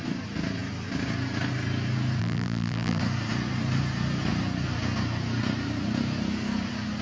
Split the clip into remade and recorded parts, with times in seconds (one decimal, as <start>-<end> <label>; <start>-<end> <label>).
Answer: 0.0-2.2 recorded; 2.2-3.0 remade; 3.0-7.0 recorded